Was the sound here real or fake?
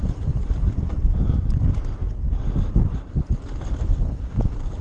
real